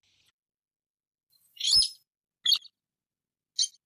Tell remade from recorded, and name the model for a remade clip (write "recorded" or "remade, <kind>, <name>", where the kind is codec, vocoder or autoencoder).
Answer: recorded